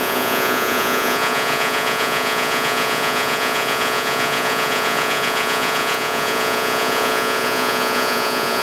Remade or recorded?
remade